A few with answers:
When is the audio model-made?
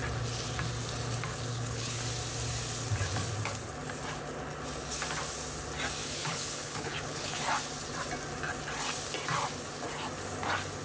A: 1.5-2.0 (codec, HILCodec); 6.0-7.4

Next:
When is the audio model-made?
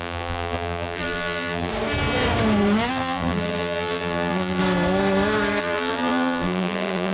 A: 0.0-1.7 (vocoder, BigVGAN v2); 2.9-4.6; 5.6-7.1